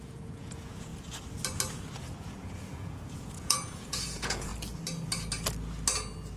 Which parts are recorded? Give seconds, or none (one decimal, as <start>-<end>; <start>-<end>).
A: 0.9-2.3; 4.5-6.4